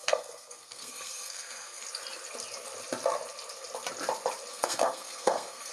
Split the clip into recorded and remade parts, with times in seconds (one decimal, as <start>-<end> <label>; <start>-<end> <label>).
0.0-1.8 remade; 1.8-4.5 recorded; 4.5-5.7 remade